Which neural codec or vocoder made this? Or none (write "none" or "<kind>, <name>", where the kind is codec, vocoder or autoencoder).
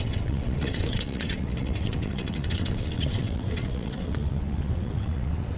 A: vocoder, WaveNeXt